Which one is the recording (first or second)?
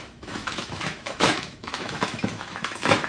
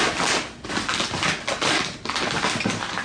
second